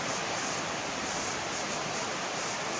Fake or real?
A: real